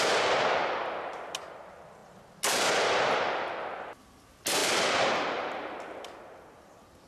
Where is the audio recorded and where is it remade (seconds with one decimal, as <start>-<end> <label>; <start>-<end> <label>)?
0.0-7.1 recorded